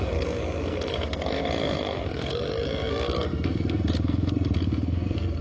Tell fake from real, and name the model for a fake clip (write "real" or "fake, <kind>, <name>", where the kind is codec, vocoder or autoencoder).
fake, codec, SNAC